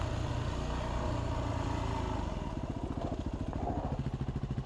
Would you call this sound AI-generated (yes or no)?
no